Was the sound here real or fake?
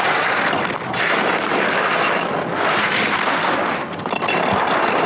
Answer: real